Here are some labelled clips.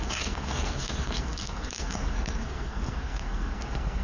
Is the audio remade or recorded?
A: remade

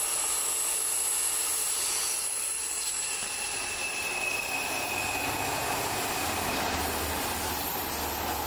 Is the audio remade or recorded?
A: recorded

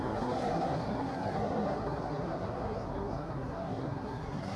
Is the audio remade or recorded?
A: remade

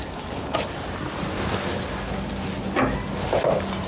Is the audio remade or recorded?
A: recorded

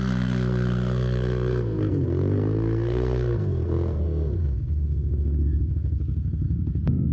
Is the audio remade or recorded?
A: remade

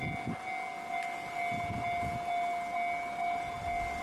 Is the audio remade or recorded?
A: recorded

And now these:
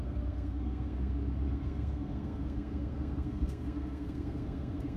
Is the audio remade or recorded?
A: remade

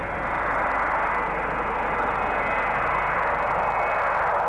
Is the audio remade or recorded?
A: recorded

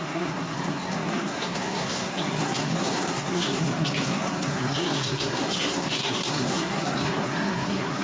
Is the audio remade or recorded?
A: remade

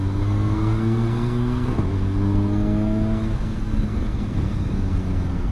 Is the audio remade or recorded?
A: remade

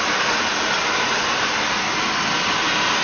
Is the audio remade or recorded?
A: recorded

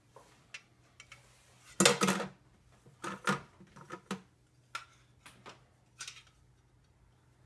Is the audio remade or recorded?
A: recorded